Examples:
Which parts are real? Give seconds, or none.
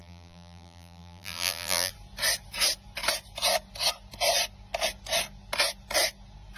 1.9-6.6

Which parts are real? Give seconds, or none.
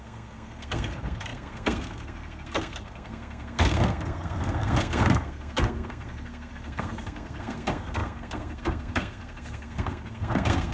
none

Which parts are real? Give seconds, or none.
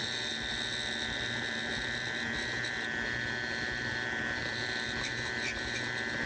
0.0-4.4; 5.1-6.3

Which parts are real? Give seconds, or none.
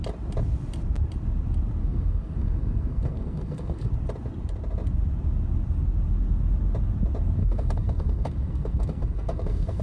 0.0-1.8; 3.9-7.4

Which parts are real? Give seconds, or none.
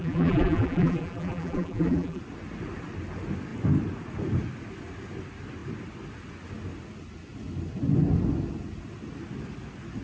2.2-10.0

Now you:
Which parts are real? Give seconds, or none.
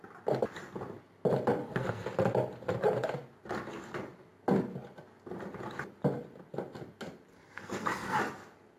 0.0-1.6; 2.1-7.3; 8.2-8.8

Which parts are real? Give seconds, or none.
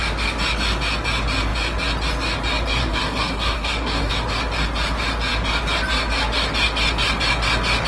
0.0-2.8; 4.1-7.9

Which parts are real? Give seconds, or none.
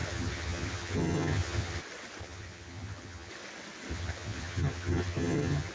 1.8-2.2; 3.3-3.9